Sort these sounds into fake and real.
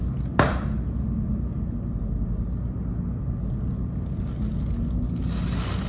real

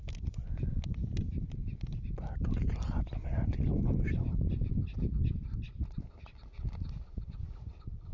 real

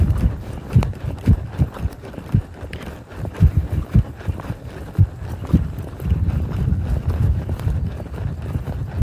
real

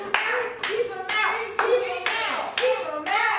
real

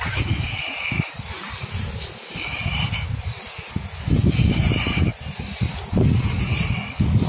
real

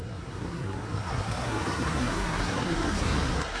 fake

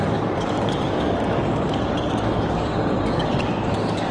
fake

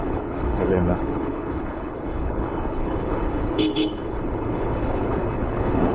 fake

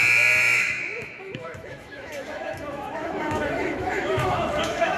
fake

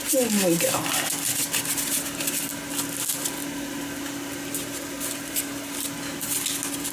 real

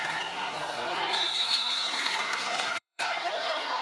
fake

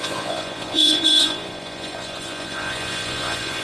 fake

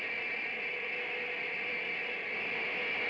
real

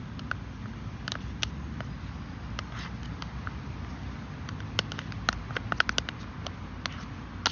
real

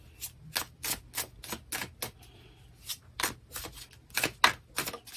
real